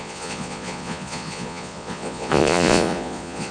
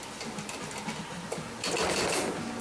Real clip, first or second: second